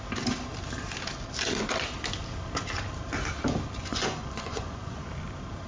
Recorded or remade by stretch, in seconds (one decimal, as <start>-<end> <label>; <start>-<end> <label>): 0.0-3.8 recorded; 3.8-5.1 remade; 5.1-5.7 recorded